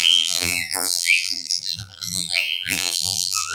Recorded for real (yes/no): no